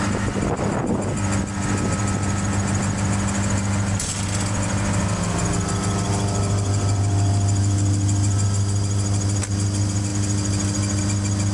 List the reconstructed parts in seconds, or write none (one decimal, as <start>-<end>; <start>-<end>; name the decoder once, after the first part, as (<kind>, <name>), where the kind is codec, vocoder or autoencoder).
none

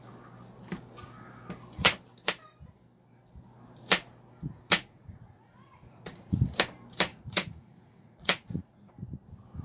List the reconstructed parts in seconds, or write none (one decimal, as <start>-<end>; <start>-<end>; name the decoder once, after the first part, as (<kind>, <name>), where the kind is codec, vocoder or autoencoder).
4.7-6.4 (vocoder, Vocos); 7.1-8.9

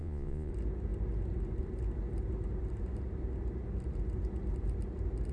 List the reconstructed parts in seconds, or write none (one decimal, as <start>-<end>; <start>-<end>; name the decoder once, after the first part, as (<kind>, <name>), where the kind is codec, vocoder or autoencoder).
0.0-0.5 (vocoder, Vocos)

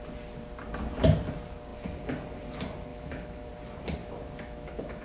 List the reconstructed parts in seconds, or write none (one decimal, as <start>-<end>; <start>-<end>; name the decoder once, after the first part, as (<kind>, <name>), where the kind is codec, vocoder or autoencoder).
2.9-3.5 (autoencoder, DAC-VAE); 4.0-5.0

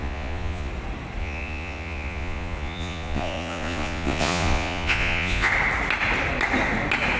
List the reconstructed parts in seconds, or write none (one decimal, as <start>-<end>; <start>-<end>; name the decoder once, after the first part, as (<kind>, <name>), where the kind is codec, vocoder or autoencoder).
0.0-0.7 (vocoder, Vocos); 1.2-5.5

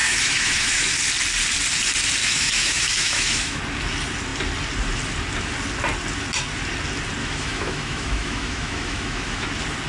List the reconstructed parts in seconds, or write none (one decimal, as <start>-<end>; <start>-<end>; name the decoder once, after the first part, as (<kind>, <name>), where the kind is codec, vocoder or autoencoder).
0.0-0.9 (autoencoder, DAC-VAE); 2.2-3.6; 7.2-9.5

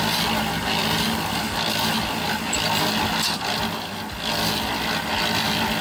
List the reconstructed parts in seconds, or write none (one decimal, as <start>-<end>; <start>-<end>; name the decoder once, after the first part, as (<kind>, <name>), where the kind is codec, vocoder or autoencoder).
none

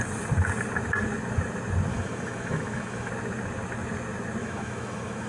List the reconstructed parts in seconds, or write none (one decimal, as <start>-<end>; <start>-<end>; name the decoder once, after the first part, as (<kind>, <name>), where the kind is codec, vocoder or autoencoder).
1.9-3.1 (autoencoder, DAC-VAE); 4.4-5.3